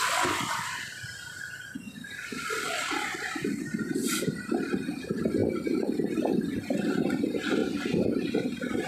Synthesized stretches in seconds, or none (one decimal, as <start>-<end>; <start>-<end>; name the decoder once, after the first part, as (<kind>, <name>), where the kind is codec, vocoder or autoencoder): 0.0-7.6 (vocoder, BigVGAN v2)